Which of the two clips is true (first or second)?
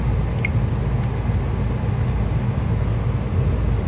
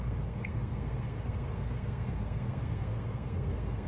first